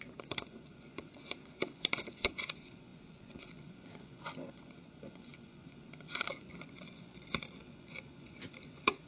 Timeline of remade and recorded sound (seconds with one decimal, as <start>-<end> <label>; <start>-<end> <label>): 0.0-9.1 remade